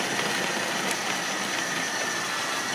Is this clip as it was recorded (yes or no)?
yes